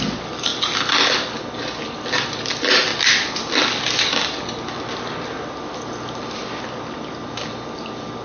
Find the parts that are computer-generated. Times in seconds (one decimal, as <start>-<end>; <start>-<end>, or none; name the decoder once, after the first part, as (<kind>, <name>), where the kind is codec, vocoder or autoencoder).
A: 0.0-0.5 (vocoder, BigVGAN v2); 1.8-2.9; 7.3-8.2